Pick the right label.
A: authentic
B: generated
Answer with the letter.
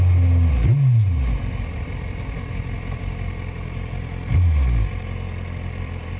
A